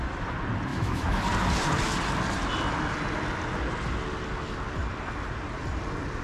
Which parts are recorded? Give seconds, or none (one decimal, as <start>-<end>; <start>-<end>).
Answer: 0.0-0.7; 1.2-6.2